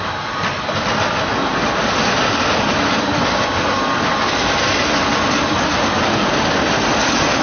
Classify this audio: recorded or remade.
recorded